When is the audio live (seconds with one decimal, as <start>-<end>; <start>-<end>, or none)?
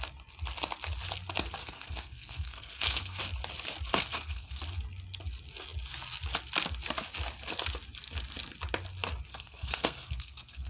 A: 0.0-1.6; 3.2-3.9; 4.6-9.3